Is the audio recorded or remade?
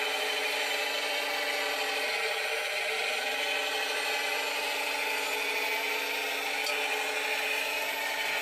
recorded